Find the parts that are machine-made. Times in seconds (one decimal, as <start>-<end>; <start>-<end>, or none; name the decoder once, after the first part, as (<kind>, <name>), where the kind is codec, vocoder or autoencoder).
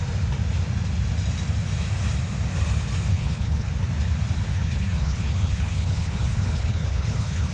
3.1-3.7 (codec, HILCodec); 4.5-7.5